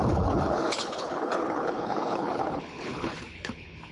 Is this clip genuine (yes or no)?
no